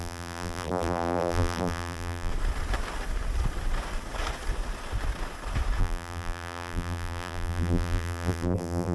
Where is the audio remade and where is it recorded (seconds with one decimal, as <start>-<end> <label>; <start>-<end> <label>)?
0.0-2.3 remade; 2.3-5.8 recorded; 5.8-8.9 remade